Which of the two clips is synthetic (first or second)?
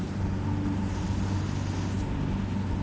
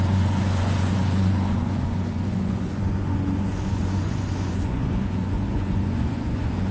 second